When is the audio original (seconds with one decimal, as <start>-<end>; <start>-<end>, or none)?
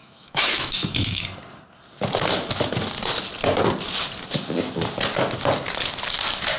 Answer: 1.2-6.6